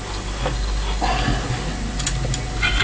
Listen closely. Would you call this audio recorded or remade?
recorded